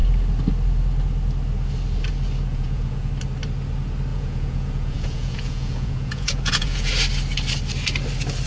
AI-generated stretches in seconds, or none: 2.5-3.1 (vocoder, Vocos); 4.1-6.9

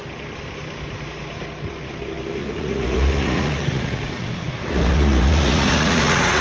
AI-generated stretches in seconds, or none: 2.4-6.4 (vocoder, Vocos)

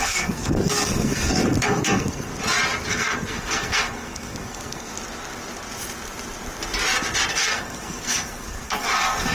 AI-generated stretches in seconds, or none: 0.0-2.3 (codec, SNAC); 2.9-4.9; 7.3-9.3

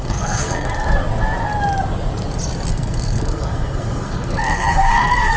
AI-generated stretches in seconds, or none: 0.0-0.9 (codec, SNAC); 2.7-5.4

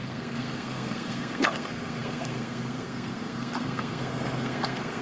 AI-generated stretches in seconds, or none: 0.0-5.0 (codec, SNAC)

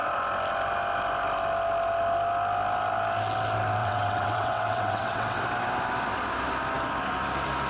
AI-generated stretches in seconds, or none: 3.8-5.4 (vocoder, WaveNeXt)

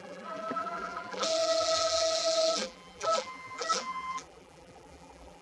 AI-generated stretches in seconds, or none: 0.0-5.4 (vocoder, BigVGAN v2)

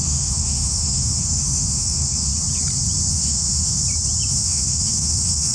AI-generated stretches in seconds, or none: 0.0-2.3 (autoencoder, DAC-VAE); 3.1-3.8; 4.3-5.5